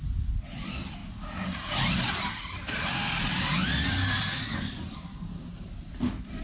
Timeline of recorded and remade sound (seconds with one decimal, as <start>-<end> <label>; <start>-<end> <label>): 0.0-6.4 recorded

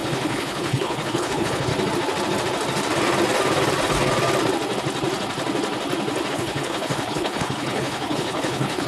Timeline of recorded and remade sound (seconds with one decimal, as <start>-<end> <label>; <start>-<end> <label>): 0.0-1.7 remade; 1.7-6.3 recorded; 6.3-8.9 remade

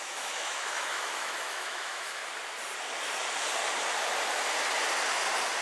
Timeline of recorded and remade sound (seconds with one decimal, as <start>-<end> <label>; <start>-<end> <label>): 0.0-2.2 remade; 2.2-5.6 recorded

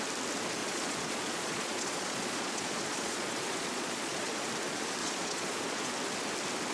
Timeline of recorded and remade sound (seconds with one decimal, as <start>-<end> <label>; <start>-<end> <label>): 0.0-0.6 recorded; 0.6-4.5 remade; 4.5-5.0 recorded; 5.0-5.9 remade; 5.9-6.7 recorded